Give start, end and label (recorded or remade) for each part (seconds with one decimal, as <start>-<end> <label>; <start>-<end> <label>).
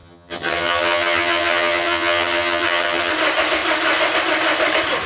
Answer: 0.0-3.1 remade; 3.1-5.1 recorded